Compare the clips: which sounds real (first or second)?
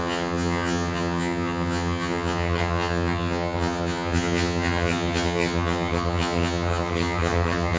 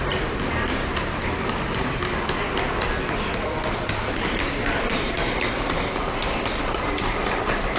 second